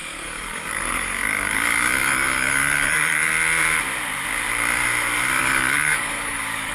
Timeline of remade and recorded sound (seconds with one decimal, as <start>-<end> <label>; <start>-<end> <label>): 0.0-3.3 remade; 3.3-5.4 recorded; 5.4-6.7 remade